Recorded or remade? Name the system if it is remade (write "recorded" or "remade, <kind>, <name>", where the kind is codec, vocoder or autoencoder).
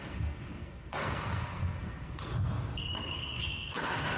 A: remade, codec, SNAC